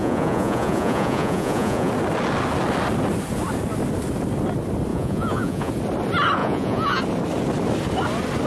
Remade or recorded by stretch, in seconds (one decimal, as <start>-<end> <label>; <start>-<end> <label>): 0.0-1.9 remade; 1.9-4.9 recorded; 4.9-5.7 remade; 5.7-6.4 recorded; 6.4-7.0 remade; 7.0-8.5 recorded